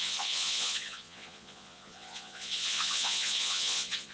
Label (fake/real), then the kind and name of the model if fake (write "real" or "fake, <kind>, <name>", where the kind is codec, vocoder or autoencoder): fake, vocoder, Vocos